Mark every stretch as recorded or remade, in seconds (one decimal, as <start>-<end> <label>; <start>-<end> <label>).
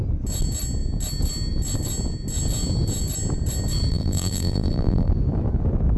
0.0-3.9 recorded; 3.9-5.1 remade; 5.1-6.0 recorded